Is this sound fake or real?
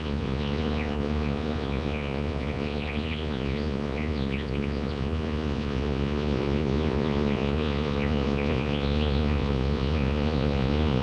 fake